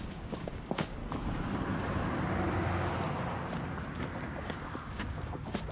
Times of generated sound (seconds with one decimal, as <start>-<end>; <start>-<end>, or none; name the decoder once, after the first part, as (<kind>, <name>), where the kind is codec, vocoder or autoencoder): 0.0-1.0 (codec, DAC); 4.2-5.7